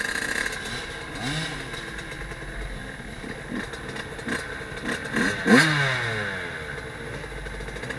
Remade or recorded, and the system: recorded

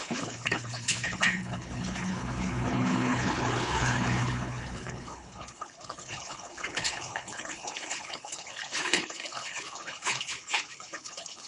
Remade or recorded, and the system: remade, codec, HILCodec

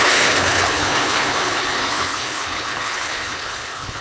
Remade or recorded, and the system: remade, codec, HILCodec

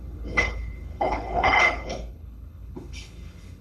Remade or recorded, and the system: remade, codec, HILCodec